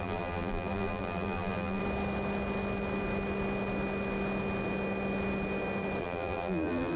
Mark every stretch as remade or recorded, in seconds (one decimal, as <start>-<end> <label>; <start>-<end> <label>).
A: 0.0-1.8 remade; 1.8-6.0 recorded; 6.0-7.0 remade